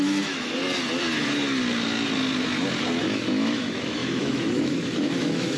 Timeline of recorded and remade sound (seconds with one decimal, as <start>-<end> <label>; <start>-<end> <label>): 0.0-0.6 remade; 0.6-3.0 recorded; 3.0-5.6 remade